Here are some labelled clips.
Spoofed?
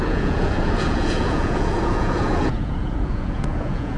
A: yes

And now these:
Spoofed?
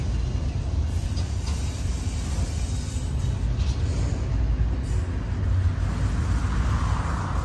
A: no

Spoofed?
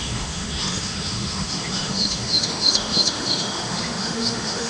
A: yes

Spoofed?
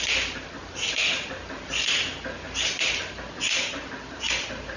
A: no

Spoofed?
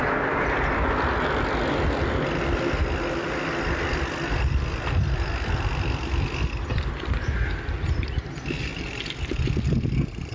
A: no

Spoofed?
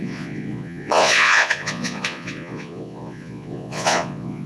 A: yes